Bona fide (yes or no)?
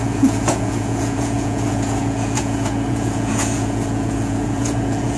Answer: no